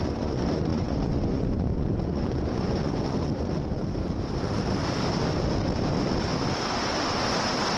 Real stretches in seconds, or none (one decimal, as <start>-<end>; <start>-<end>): 3.8-7.8